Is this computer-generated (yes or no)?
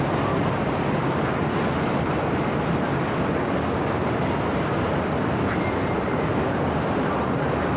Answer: no